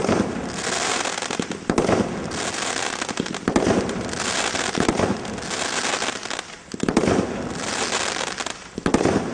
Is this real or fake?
real